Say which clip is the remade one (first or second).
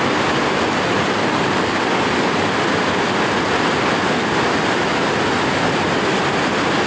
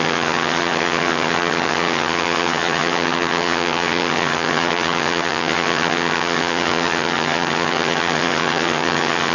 second